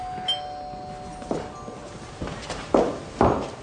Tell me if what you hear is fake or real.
real